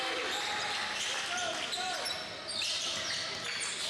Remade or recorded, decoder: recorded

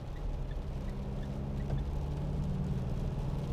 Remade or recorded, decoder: recorded